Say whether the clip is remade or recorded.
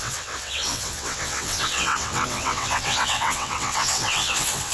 remade